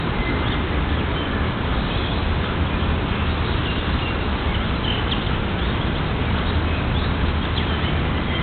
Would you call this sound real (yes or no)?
yes